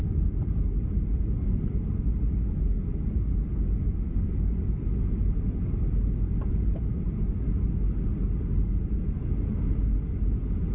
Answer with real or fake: real